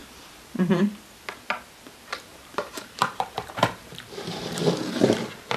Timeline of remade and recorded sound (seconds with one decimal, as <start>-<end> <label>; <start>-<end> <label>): 0.0-0.8 remade; 0.8-2.3 recorded; 2.3-4.6 remade; 4.6-5.6 recorded